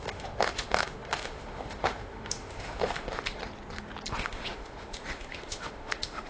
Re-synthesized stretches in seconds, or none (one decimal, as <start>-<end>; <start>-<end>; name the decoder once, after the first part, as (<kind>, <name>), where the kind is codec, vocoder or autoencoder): 0.0-3.4 (autoencoder, DAC-VAE); 4.1-6.3